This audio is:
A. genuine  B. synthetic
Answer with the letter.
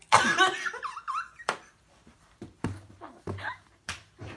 B